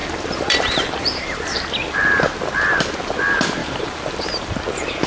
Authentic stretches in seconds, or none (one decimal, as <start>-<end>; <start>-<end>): 1.6-3.6; 4.5-5.1